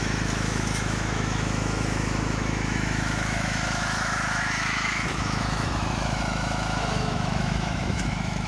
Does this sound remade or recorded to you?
remade